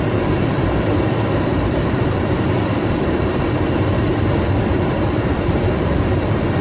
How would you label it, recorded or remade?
remade